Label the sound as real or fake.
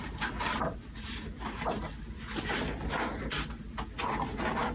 real